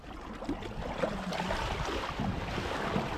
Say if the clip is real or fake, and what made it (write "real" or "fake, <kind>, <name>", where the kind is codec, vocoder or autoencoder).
real